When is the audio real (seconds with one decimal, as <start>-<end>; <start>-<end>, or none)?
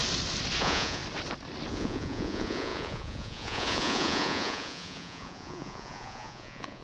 0.0-0.6; 1.0-1.7